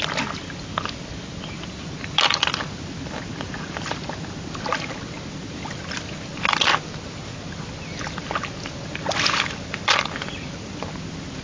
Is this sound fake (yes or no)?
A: no